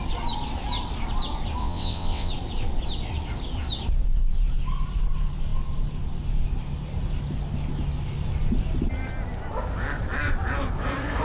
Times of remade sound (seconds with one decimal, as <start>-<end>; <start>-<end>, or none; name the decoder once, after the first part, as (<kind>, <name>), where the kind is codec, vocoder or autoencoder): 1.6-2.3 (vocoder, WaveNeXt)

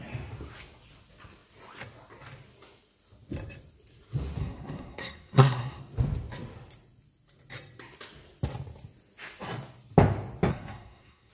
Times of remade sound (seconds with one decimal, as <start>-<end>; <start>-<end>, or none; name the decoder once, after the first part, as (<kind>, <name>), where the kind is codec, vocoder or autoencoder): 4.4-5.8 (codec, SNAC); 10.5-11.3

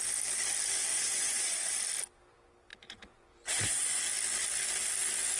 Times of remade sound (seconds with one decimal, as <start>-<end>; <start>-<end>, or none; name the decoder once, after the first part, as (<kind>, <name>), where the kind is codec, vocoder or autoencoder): 0.9-1.7 (vocoder, Vocos); 2.7-4.0